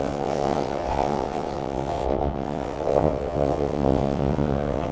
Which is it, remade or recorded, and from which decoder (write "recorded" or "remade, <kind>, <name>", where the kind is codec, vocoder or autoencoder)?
remade, vocoder, WaveNeXt